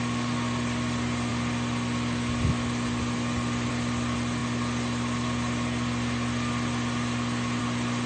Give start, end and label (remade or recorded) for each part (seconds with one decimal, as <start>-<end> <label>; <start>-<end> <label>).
0.0-8.1 recorded

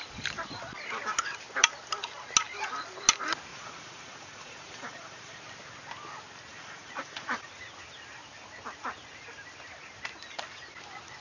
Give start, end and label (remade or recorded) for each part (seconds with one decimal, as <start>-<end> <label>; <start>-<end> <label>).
0.0-3.5 recorded; 3.5-5.4 remade; 5.4-6.5 recorded; 6.5-7.5 remade; 7.5-11.2 recorded